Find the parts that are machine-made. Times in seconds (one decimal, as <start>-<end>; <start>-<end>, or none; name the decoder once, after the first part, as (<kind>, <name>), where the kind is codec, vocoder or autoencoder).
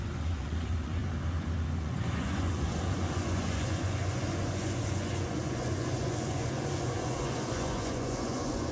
0.0-1.0 (vocoder, Vocos); 1.8-8.7